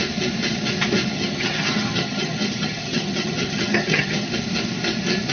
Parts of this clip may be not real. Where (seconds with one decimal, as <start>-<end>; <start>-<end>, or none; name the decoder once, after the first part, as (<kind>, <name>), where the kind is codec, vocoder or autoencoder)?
1.1-4.3 (vocoder, HiFi-GAN)